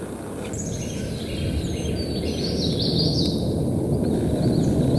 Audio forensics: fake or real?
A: real